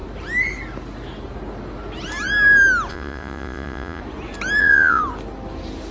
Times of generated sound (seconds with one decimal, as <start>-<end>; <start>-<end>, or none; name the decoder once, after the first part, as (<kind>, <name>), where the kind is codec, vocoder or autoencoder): 2.9-4.0 (vocoder, Vocos); 4.6-5.0